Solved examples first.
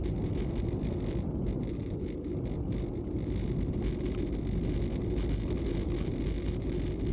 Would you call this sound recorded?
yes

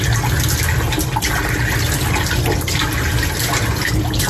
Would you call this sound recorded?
yes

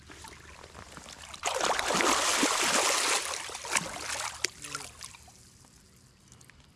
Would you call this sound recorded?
yes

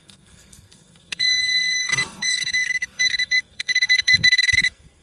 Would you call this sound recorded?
no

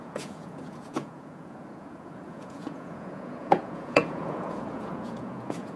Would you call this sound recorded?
no